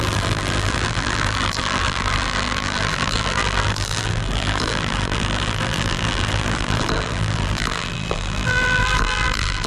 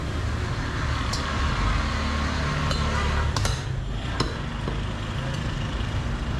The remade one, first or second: first